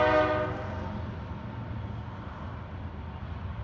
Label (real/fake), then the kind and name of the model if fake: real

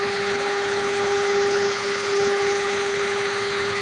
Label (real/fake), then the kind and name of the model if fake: fake, codec, HILCodec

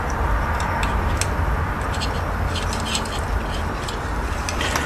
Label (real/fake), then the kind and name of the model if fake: real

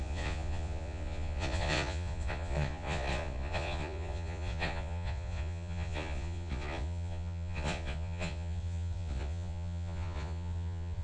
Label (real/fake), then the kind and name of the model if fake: fake, vocoder, Vocos